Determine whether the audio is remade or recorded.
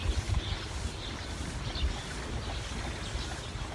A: recorded